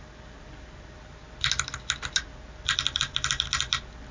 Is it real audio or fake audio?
real